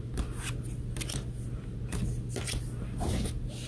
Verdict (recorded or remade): recorded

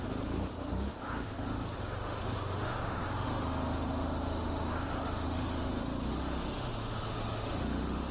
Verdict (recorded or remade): remade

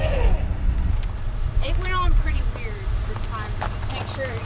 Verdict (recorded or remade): recorded